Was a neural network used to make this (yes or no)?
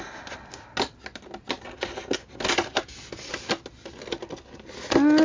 no